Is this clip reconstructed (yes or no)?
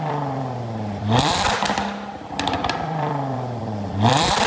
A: yes